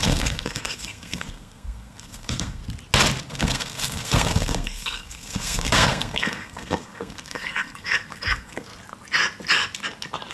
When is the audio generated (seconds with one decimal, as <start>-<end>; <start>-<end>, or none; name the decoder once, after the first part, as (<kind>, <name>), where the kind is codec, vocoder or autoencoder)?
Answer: 0.0-2.6 (codec, SNAC); 3.3-8.7

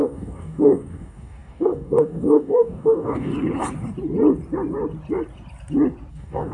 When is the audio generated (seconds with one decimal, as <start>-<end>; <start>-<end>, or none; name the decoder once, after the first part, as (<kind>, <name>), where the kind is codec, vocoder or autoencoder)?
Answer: 0.0-3.3 (codec, DAC); 6.1-6.5

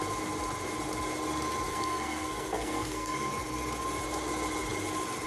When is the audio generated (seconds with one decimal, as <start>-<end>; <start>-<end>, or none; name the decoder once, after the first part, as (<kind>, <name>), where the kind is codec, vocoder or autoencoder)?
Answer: 1.7-3.3 (codec, SNAC)

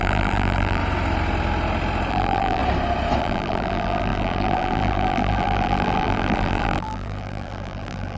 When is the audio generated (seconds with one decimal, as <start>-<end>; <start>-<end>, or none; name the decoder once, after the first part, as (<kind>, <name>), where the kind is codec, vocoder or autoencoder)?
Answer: 0.0-0.8 (vocoder, BigVGAN v2); 2.1-2.6; 3.2-8.2

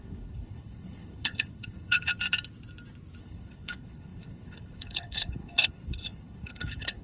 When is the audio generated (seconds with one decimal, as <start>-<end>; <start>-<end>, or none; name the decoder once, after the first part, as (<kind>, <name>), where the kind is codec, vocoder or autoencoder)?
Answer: 0.0-2.1 (codec, HILCodec); 3.2-7.0

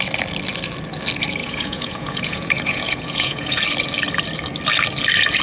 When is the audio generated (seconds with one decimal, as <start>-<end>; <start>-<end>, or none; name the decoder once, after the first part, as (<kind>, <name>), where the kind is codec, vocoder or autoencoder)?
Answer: 1.4-3.6 (vocoder, Vocos)

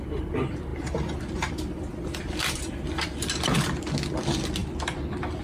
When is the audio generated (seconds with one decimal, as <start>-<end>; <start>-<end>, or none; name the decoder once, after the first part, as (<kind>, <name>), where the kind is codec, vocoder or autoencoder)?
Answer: 0.7-3.9 (vocoder, BigVGAN v2); 4.6-5.4